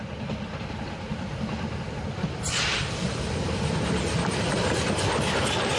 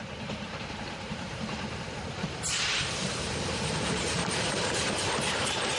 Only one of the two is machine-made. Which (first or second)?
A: second